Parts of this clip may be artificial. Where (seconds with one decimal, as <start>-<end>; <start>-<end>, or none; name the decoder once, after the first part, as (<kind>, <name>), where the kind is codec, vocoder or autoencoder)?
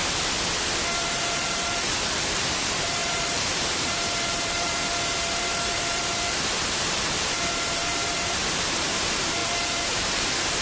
0.9-10.6 (vocoder, BigVGAN v2)